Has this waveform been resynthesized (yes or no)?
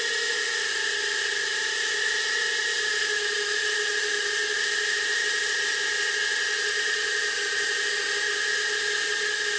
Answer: no